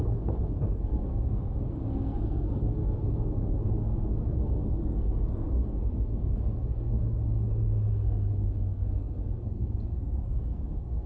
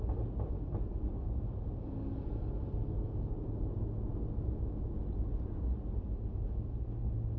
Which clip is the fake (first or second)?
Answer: first